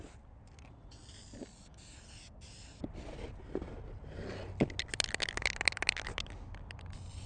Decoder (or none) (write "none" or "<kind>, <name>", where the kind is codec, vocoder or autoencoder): none